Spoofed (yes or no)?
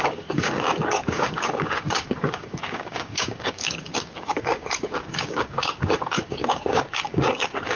yes